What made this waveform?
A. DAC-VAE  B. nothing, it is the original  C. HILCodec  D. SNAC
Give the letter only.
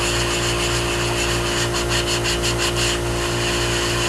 B